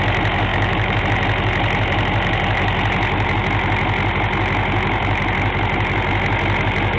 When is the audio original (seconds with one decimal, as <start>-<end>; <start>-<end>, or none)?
0.0-0.5; 1.0-7.0